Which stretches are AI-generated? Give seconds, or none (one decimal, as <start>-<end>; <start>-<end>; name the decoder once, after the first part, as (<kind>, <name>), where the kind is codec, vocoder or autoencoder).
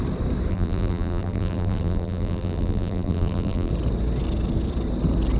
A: 0.5-3.7 (vocoder, BigVGAN v2)